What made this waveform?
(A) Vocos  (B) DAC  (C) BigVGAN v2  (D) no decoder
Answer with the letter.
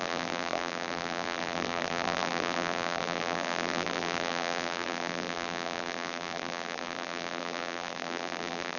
C